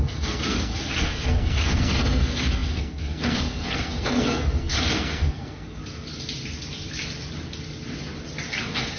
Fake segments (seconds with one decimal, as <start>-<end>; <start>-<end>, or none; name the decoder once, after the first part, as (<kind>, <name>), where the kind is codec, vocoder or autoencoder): 0.0-5.8 (codec, SNAC); 8.6-9.0